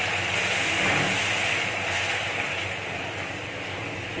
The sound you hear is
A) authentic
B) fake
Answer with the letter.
A